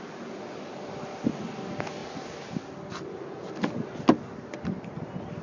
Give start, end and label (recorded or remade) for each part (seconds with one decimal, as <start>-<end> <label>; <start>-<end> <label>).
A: 0.0-5.4 recorded